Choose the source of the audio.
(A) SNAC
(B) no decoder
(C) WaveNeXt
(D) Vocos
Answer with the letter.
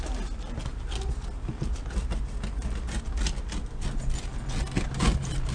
B